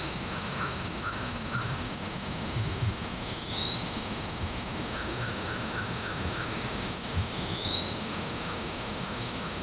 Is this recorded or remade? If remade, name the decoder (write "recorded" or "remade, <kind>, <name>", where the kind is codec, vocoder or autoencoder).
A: remade, autoencoder, DAC-VAE